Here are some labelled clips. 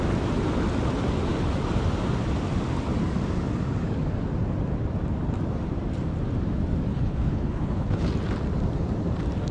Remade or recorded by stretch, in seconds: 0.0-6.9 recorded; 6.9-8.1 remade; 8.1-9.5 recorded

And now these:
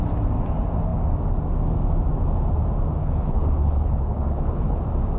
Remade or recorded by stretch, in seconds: 0.0-3.0 recorded; 3.0-4.8 remade; 4.8-5.2 recorded

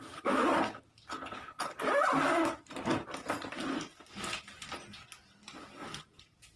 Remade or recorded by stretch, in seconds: 0.0-1.1 recorded; 1.1-1.8 remade; 1.8-6.6 recorded

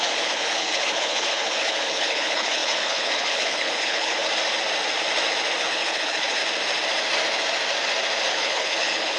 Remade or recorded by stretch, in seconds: 0.0-4.2 remade; 4.2-5.6 recorded; 5.6-6.4 remade; 6.4-8.3 recorded; 8.3-9.2 remade

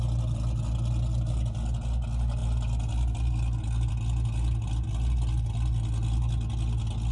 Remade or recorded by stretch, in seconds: 0.0-7.1 recorded

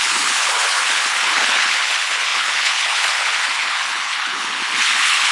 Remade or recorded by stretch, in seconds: 0.0-5.3 remade

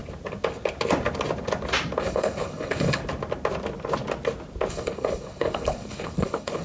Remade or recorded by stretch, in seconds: 0.0-2.0 recorded; 2.0-3.0 remade; 3.0-4.7 recorded; 4.7-6.6 remade